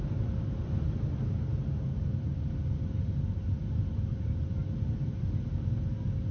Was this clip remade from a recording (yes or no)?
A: no